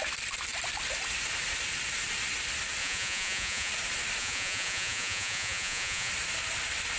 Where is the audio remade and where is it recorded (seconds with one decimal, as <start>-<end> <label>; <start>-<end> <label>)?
0.0-2.8 recorded; 2.8-3.7 remade; 3.7-4.2 recorded; 4.2-6.1 remade; 6.1-7.0 recorded